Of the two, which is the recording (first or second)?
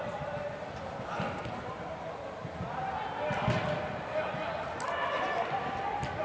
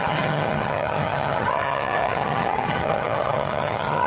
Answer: first